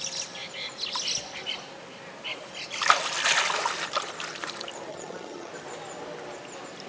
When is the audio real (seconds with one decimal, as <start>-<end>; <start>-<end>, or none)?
0.0-4.9; 5.5-6.9